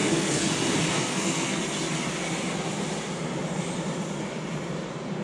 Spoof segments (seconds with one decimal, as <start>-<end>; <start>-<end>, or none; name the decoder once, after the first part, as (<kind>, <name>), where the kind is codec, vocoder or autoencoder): 0.0-0.5 (codec, SNAC); 0.9-1.6

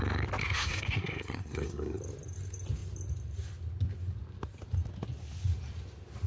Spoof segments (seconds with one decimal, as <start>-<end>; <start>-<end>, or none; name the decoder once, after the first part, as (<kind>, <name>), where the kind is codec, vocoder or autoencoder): 0.4-2.0 (codec, SNAC)

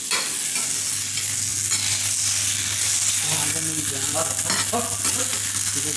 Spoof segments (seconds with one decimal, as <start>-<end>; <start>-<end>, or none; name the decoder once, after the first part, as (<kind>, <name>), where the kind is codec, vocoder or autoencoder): none

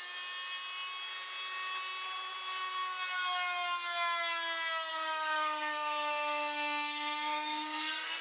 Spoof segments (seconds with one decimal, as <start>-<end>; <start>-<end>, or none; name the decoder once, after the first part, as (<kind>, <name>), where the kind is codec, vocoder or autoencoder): 4.9-8.2 (codec, SNAC)

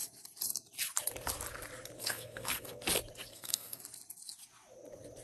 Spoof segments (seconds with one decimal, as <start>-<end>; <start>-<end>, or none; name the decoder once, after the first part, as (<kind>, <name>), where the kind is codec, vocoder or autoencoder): 2.0-2.8 (codec, SNAC); 3.3-3.8

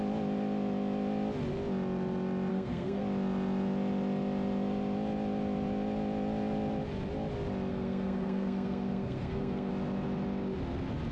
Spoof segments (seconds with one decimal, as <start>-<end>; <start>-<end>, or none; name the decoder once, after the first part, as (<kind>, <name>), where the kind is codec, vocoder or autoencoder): 2.5-3.0 (codec, SNAC); 7.7-9.7